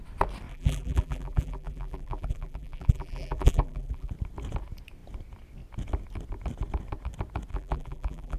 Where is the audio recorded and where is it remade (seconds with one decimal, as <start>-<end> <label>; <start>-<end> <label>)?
0.0-0.5 recorded; 0.5-4.1 remade; 4.1-7.5 recorded; 7.5-8.4 remade

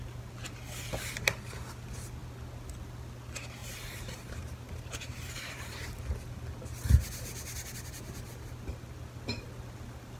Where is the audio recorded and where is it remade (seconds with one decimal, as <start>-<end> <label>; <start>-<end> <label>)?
0.0-3.6 recorded; 3.6-6.0 remade; 6.0-10.2 recorded

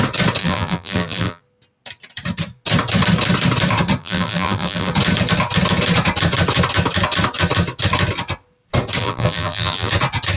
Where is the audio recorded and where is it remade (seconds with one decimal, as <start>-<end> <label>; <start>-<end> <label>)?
0.0-0.4 recorded; 0.4-1.4 remade; 1.4-4.0 recorded; 4.0-4.9 remade; 4.9-9.0 recorded; 9.0-9.9 remade; 9.9-10.4 recorded

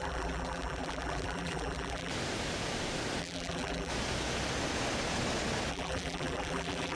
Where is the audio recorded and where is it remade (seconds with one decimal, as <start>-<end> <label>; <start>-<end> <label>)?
0.0-2.1 remade; 2.1-3.2 recorded; 3.2-3.9 remade; 3.9-5.7 recorded; 5.7-7.0 remade

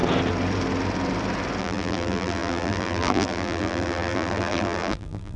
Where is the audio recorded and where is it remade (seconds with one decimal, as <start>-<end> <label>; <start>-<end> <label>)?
0.0-1.6 recorded; 1.6-5.4 remade

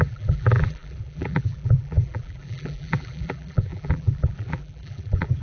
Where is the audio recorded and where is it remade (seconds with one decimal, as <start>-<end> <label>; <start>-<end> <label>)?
0.0-5.4 remade

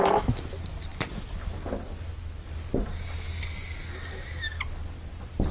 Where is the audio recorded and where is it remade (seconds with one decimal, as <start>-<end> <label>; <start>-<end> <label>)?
0.0-5.5 recorded

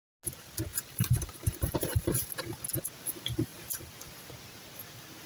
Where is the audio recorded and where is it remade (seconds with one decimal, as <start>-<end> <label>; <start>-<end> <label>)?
0.0-0.7 recorded; 0.7-2.3 remade; 2.3-5.3 recorded